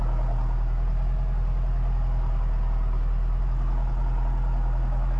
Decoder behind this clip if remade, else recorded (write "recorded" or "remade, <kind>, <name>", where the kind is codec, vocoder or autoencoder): recorded